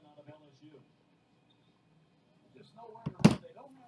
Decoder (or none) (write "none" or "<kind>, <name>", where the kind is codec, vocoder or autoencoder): none